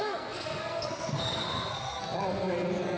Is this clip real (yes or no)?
no